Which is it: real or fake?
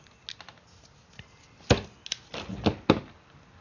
real